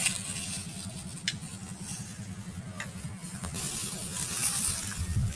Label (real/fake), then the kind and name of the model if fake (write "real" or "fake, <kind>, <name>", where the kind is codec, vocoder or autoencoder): real